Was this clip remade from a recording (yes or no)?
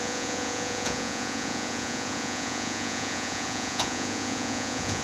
yes